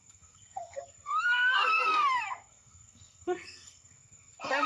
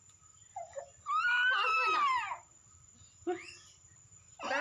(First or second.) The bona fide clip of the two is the second